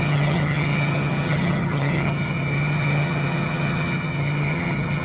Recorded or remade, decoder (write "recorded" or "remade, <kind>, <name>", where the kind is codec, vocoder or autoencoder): remade, vocoder, HiFi-GAN